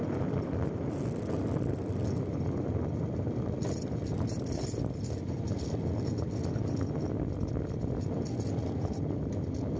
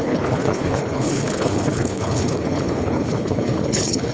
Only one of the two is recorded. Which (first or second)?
first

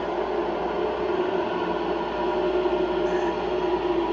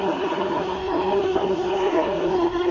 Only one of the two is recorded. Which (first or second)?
first